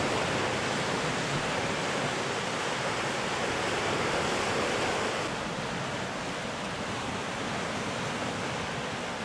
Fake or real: real